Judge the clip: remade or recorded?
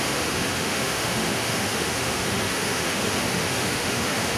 remade